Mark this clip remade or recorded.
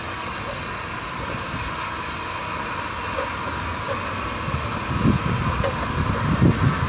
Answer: recorded